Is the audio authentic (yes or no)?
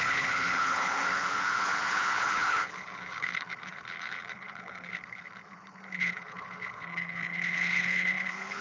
no